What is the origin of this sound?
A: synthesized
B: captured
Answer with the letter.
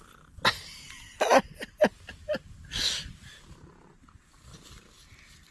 B